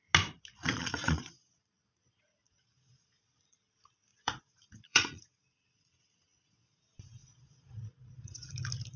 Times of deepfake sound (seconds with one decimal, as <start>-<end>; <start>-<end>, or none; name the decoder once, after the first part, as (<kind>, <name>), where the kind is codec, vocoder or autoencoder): 0.6-3.6 (vocoder, Vocos); 4.1-6.8; 7.2-8.5